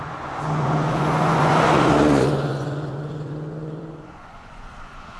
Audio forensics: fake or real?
fake